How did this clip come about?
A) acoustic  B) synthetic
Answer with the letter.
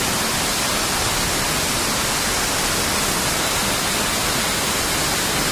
A